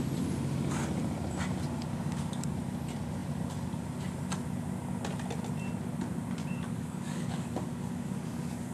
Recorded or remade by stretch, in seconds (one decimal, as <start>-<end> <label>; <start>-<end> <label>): 0.0-1.9 recorded; 1.9-2.6 remade; 2.6-6.4 recorded; 6.4-8.7 remade